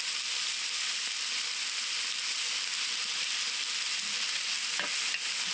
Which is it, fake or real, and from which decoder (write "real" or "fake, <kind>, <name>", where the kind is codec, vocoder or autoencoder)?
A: real